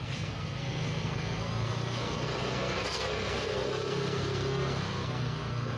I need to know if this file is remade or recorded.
remade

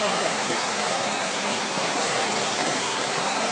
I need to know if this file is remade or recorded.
remade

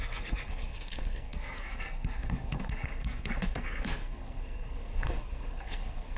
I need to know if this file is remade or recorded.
remade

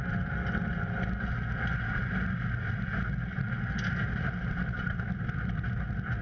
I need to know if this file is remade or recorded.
recorded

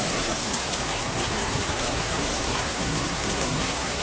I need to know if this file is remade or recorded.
remade